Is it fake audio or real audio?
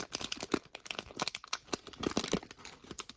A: real